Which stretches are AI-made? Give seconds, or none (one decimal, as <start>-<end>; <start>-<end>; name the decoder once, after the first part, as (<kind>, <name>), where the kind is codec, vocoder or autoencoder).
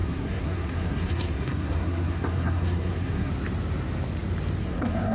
0.0-3.3 (codec, SNAC); 4.6-5.1